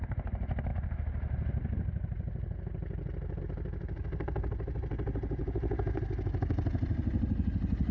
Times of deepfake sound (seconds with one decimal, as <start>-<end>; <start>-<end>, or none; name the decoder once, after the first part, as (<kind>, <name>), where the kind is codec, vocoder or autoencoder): none